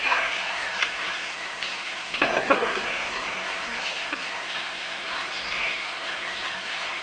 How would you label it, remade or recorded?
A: remade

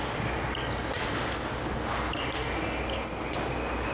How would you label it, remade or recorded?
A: recorded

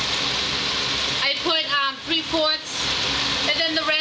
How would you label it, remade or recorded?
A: recorded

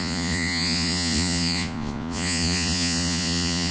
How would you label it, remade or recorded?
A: remade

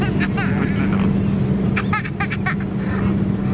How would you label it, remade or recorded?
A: recorded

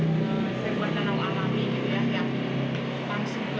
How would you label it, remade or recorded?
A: recorded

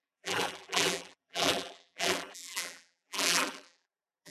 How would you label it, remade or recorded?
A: remade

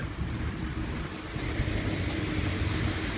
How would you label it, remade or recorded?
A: recorded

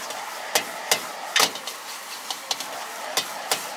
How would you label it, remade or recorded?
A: recorded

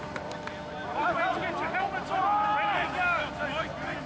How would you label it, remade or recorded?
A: recorded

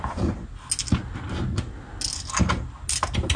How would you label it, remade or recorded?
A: recorded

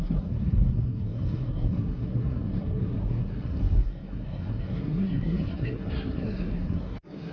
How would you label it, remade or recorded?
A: remade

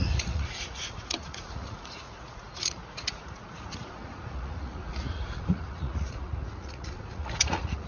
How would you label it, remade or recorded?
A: remade